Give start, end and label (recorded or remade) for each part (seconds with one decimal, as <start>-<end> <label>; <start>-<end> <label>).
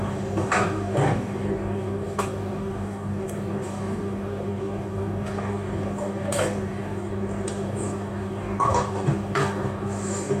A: 0.0-10.4 remade